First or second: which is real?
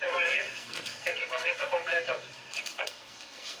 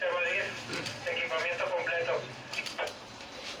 second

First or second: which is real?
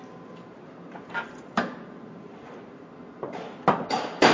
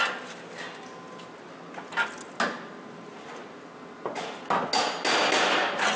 second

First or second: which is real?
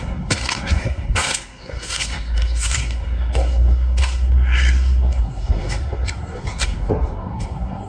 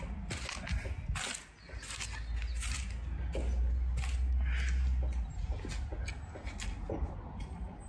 second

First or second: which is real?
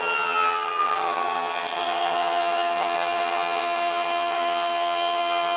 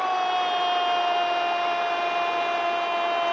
second